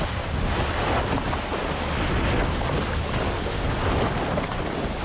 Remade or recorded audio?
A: recorded